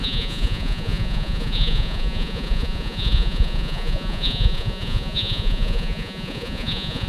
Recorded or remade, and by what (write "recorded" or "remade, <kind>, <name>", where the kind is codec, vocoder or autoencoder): remade, vocoder, Vocos